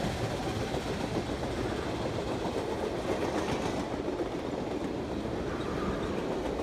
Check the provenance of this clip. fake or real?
real